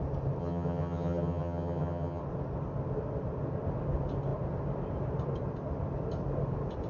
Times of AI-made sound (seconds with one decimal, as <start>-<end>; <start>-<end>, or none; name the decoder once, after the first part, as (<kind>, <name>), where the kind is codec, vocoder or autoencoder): 0.4-2.2 (vocoder, HiFi-GAN)